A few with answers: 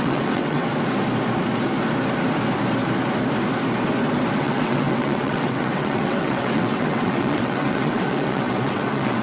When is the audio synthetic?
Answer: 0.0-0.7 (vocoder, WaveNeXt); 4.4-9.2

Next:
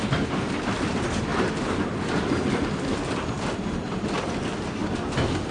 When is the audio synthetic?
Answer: none

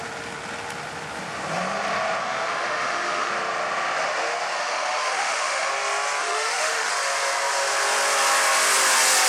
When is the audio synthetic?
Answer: 2.2-3.3 (autoencoder, DAC-VAE); 4.6-5.7; 6.2-6.9

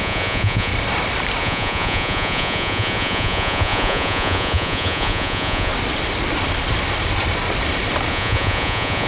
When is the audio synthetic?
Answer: 0.0-0.7 (vocoder, Vocos); 1.4-5.7; 8.1-9.1